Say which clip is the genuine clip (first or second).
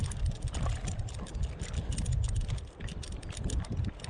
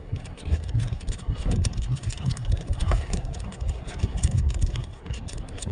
first